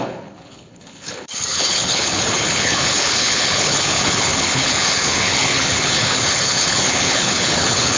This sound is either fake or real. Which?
fake